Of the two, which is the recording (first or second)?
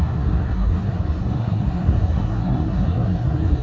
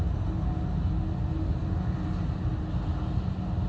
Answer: second